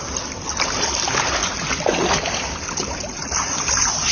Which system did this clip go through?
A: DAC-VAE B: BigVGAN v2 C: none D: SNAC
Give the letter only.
C